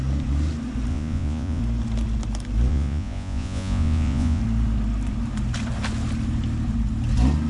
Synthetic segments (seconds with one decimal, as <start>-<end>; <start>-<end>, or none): 0.9-1.6; 2.7-4.4